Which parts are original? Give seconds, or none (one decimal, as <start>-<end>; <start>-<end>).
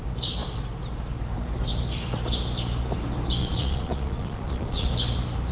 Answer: 0.0-3.4; 4.9-5.5